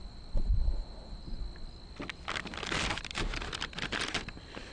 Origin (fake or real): real